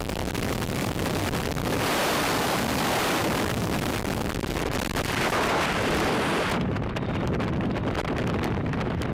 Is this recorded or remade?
remade